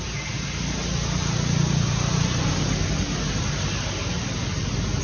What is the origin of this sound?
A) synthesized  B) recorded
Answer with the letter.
B